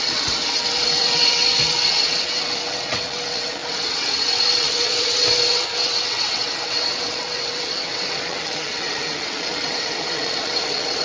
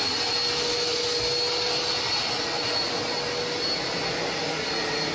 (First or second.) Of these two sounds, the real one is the second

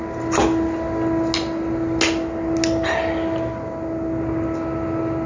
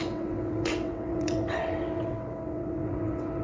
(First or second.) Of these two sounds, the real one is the first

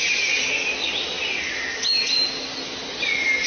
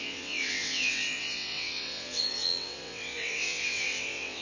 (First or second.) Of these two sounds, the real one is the first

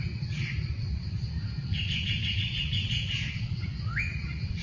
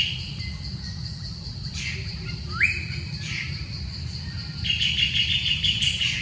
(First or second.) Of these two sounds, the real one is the second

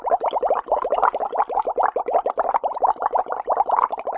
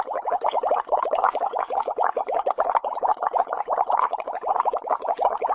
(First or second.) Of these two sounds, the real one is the first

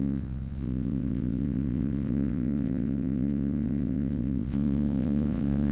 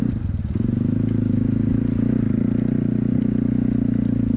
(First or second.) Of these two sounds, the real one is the second